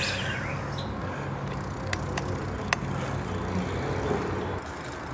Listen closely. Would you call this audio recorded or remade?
recorded